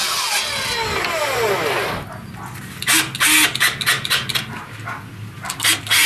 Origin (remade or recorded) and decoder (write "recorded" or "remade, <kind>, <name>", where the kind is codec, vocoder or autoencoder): recorded